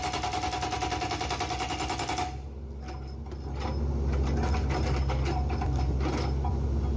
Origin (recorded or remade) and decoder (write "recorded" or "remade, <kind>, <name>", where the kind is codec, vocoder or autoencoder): recorded